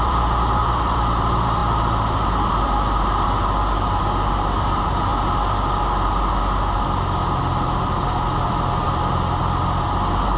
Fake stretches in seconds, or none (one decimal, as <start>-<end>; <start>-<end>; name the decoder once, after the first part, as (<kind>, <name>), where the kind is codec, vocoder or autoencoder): 0.0-5.1 (vocoder, BigVGAN v2); 9.4-10.4